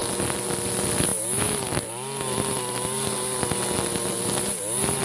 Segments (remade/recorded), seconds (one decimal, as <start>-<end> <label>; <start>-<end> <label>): 0.0-5.0 recorded